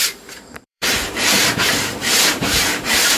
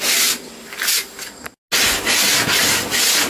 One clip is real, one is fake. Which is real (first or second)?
second